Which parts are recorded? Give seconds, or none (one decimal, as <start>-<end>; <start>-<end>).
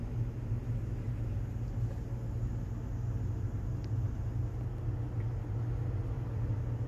0.0-6.9